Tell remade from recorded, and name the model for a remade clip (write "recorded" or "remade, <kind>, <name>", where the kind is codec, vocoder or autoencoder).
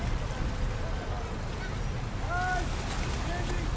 recorded